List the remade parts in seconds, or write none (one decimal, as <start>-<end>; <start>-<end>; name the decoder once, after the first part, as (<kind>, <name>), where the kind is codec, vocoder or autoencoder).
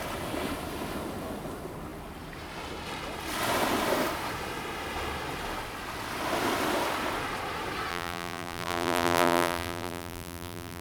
7.9-10.8 (vocoder, BigVGAN v2)